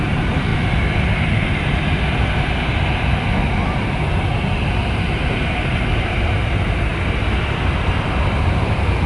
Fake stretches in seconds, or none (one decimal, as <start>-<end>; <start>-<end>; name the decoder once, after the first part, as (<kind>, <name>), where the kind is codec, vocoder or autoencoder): 0.0-0.5 (vocoder, BigVGAN v2); 4.7-6.9; 8.4-9.1